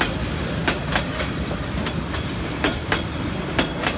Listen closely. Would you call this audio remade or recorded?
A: recorded